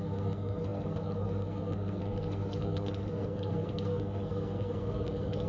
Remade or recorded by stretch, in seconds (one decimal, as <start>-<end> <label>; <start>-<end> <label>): 0.0-5.5 remade